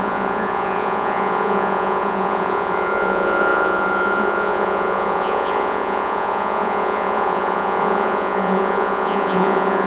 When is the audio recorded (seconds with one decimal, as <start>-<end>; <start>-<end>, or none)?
none